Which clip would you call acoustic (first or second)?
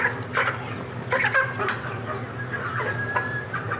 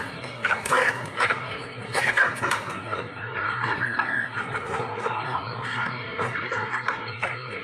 first